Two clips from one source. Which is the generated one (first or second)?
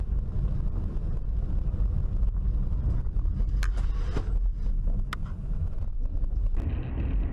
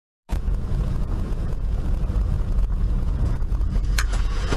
second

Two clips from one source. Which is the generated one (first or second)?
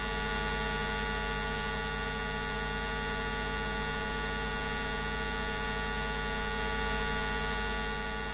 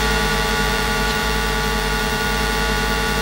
second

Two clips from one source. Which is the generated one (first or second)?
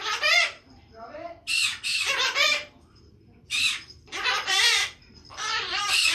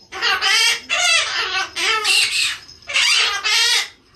first